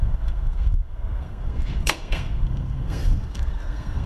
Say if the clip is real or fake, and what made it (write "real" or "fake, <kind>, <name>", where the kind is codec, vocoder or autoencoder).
fake, codec, SNAC